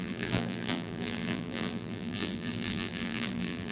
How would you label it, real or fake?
fake